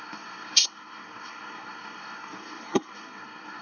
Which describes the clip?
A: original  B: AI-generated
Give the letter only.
B